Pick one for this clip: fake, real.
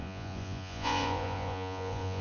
fake